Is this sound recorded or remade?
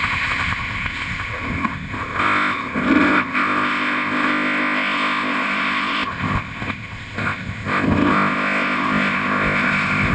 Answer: remade